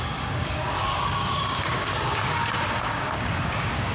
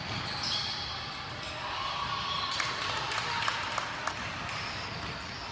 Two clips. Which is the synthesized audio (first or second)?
first